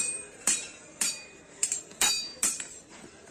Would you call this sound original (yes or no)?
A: no